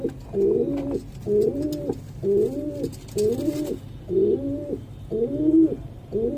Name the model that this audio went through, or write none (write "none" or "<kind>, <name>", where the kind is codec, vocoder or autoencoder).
none